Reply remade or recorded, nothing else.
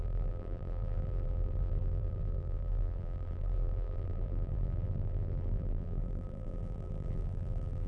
remade